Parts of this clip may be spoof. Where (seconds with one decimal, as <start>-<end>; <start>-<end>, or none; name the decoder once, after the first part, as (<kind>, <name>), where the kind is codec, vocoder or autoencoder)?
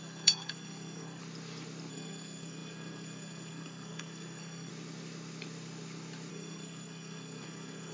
0.0-1.2 (codec, SNAC); 1.9-4.7; 6.3-7.9